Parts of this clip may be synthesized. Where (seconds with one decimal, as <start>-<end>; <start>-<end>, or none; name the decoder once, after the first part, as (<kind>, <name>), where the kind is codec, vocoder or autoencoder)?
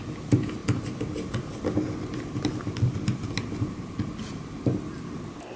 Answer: none